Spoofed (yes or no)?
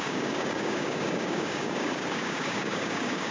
yes